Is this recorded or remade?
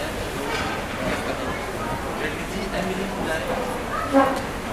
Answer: recorded